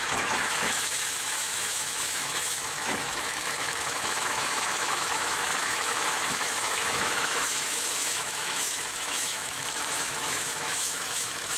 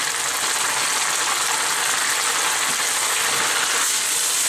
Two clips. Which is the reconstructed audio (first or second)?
first